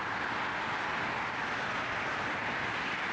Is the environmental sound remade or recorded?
recorded